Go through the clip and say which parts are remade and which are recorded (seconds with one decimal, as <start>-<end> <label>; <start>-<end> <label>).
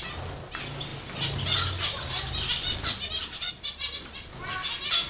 0.0-0.9 recorded; 0.9-3.5 remade; 3.5-5.1 recorded